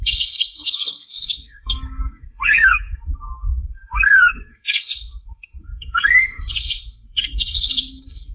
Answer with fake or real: fake